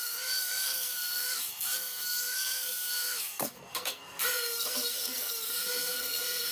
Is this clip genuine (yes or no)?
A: no